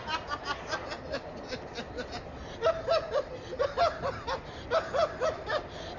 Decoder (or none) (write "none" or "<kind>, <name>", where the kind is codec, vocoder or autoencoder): none